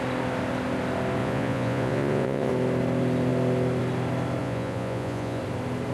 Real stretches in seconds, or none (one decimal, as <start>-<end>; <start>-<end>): 0.0-1.2; 2.5-4.4; 5.4-5.9